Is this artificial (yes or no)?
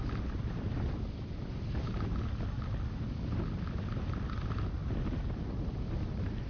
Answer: no